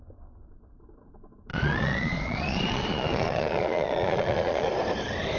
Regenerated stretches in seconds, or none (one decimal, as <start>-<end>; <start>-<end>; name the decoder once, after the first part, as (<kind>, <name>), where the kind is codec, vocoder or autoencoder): 1.5-4.7 (vocoder, Vocos)